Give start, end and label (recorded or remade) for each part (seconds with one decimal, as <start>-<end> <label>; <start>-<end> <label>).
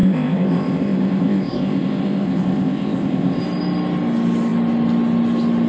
0.0-3.4 remade; 3.4-5.7 recorded